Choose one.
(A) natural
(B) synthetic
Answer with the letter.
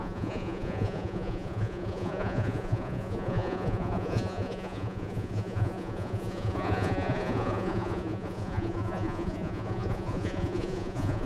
B